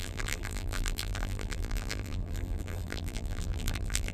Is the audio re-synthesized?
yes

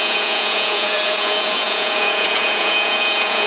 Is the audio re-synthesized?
yes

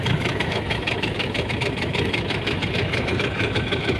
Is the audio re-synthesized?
yes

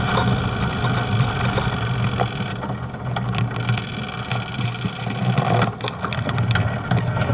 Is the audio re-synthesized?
no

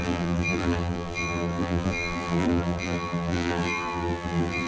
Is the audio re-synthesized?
yes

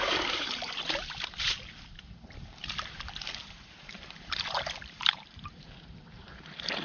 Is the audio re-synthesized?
yes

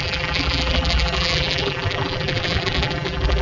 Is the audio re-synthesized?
yes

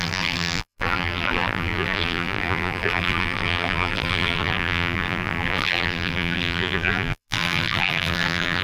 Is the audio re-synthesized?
yes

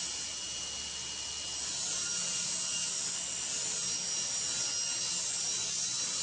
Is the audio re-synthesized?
no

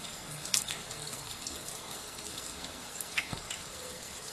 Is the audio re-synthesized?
yes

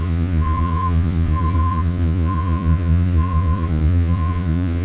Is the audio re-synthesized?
yes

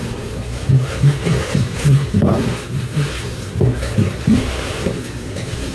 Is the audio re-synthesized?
yes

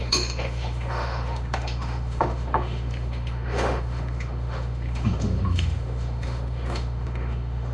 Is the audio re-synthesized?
yes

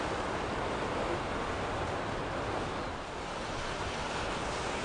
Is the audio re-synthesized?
no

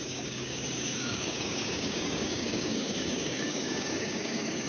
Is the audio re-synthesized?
yes